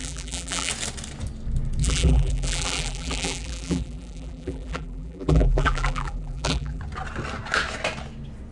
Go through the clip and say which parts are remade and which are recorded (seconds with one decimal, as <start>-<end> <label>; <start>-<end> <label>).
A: 0.0-0.7 remade; 0.7-1.8 recorded; 1.8-6.8 remade; 6.8-8.5 recorded